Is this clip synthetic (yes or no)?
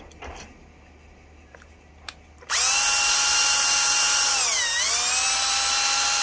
no